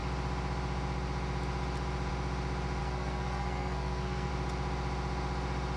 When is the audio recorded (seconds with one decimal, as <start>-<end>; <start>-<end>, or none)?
0.0-2.8; 4.3-5.8